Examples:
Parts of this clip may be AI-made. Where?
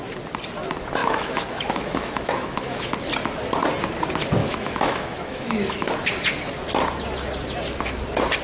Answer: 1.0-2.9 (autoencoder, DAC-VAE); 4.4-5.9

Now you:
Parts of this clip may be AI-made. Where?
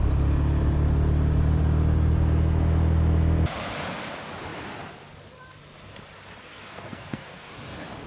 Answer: 6.4-7.5 (codec, SNAC)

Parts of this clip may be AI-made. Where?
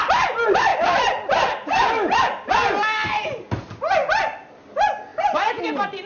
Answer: none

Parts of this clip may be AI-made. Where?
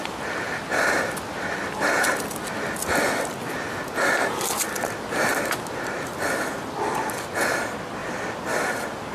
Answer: none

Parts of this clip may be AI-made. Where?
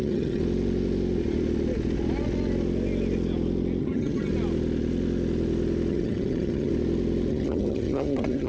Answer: 0.0-0.4 (vocoder, HiFi-GAN); 3.8-4.3; 5.9-6.7; 7.3-8.5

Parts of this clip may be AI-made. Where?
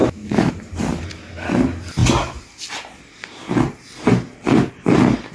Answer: 0.0-0.5 (autoencoder, DAC-VAE)